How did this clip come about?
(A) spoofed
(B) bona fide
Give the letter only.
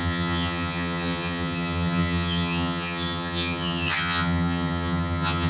A